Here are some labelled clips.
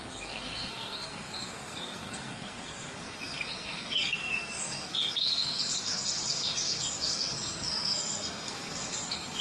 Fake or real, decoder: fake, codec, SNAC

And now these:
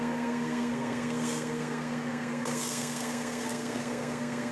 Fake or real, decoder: fake, codec, SNAC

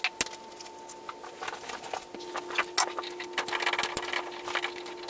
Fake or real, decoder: real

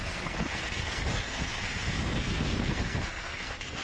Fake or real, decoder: fake, codec, SNAC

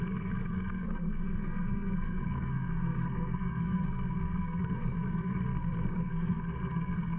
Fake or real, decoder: fake, codec, SNAC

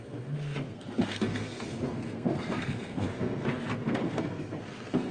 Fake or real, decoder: fake, codec, SNAC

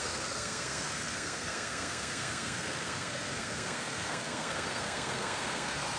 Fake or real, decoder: fake, codec, SNAC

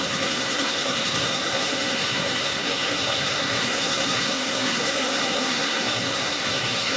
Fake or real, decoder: fake, codec, SNAC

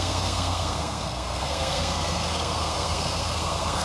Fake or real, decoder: fake, codec, SNAC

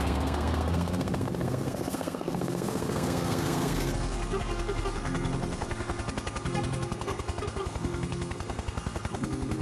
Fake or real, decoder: fake, codec, SNAC